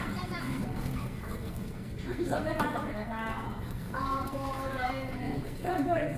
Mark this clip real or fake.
fake